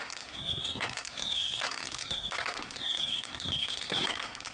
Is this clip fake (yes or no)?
yes